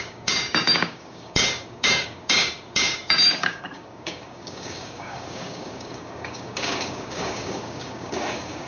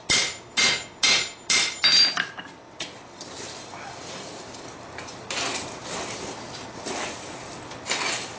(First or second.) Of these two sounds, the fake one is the first